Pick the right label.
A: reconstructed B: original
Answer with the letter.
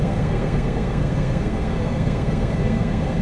A